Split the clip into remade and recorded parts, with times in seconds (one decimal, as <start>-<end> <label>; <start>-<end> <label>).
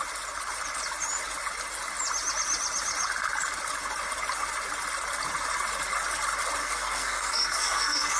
0.0-6.6 recorded; 6.6-8.2 remade